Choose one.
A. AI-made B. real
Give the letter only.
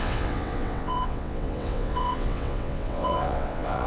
A